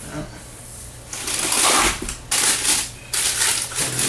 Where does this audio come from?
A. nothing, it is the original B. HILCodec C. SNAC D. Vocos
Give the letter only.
A